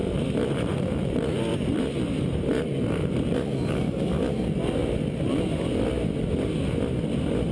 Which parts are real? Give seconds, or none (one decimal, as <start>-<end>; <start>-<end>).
4.1-4.8; 5.4-7.5